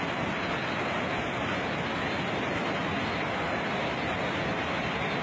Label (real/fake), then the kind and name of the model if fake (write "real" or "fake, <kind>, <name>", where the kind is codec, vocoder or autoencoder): real